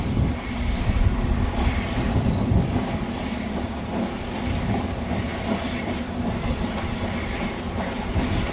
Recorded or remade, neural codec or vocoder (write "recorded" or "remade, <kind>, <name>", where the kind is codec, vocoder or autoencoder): remade, vocoder, BigVGAN v2